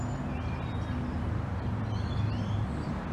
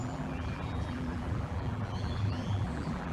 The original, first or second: first